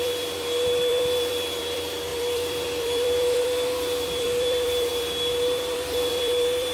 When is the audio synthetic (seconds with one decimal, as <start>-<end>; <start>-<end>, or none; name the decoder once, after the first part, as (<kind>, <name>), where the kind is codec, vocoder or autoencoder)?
0.0-6.7 (vocoder, BigVGAN v2)